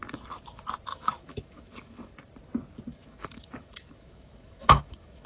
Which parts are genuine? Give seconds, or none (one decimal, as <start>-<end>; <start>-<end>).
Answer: 0.0-0.9; 2.1-2.9